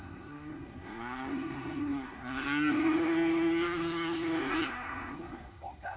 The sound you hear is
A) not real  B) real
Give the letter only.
A